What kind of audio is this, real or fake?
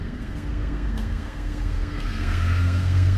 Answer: fake